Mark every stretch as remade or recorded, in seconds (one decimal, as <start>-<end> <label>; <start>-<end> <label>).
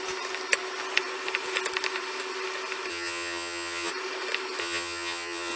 0.0-2.9 recorded; 2.9-3.9 remade; 3.9-4.6 recorded; 4.6-5.6 remade